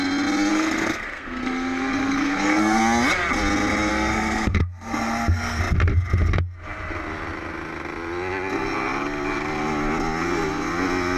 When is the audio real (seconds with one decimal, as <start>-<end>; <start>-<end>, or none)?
0.0-0.5; 2.8-3.9; 5.6-11.2